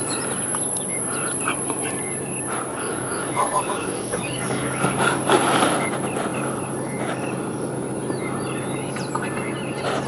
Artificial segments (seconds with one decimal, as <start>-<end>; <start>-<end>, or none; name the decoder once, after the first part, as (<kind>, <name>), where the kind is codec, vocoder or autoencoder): 2.7-5.2 (codec, DAC)

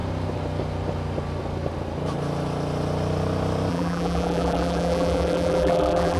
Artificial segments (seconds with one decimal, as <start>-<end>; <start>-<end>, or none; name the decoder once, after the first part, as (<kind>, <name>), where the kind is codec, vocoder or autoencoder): 3.7-6.2 (vocoder, BigVGAN v2)

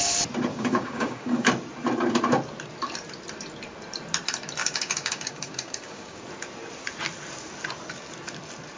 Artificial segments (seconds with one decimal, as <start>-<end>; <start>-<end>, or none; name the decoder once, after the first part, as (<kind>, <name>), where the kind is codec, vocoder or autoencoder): 0.5-1.5 (codec, DAC); 4.6-6.2

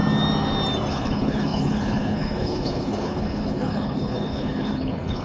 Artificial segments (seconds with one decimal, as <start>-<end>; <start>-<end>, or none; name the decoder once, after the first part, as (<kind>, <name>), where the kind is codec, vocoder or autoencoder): 0.9-5.2 (codec, HILCodec)

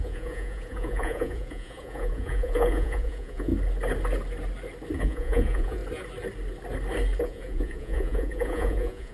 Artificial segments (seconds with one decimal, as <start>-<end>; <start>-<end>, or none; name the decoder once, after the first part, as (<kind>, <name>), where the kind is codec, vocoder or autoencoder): 0.0-3.5 (vocoder, Vocos); 5.0-5.8; 7.2-9.1

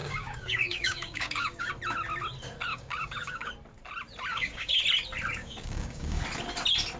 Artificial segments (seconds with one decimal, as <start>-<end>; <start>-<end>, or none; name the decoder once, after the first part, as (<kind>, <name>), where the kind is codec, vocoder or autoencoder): 0.0-1.7 (codec, DAC); 2.7-3.5; 4.3-4.8; 5.3-6.2

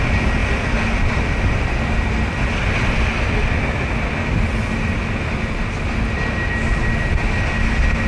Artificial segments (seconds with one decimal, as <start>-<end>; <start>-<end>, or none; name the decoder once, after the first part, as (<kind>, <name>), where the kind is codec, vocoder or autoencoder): none